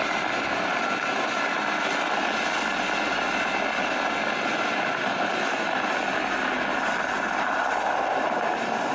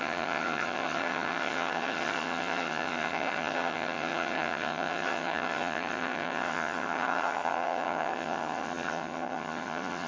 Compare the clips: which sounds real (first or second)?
first